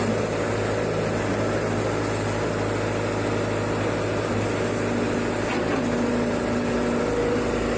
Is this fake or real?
real